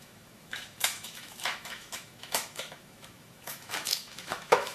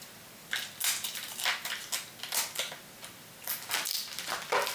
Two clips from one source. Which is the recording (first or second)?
second